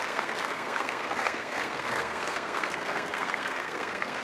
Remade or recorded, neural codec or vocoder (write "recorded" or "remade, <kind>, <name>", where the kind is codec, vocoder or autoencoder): remade, codec, SNAC